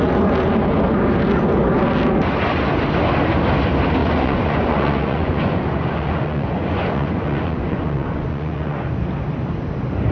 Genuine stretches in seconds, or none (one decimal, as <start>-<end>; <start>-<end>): 0.0-4.0; 8.9-10.1